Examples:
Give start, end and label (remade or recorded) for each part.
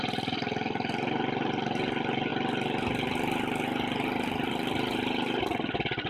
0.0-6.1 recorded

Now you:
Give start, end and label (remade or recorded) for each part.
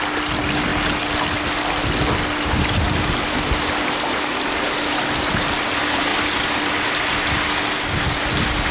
0.0-8.7 recorded